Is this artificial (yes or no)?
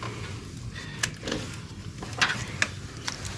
no